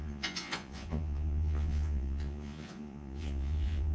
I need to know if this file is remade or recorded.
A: remade